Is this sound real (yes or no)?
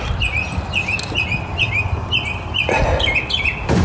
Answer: yes